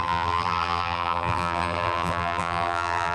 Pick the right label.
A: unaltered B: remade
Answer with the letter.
B